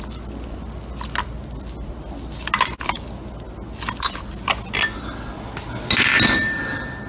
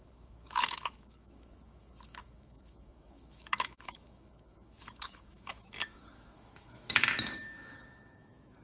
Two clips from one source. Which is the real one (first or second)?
first